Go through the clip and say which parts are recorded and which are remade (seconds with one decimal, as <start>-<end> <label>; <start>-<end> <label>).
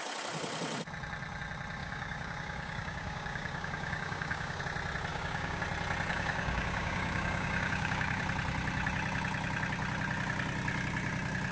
0.0-1.8 recorded; 1.8-4.6 remade; 4.6-5.1 recorded; 5.1-5.6 remade; 5.6-6.1 recorded; 6.1-8.2 remade; 8.2-11.5 recorded